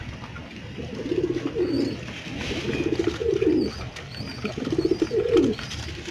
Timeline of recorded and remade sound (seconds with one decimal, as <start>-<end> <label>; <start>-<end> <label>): 0.0-6.1 recorded